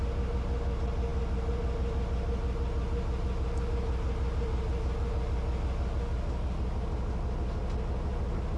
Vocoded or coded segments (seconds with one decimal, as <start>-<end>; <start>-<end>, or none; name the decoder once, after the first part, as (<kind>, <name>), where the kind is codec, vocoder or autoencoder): none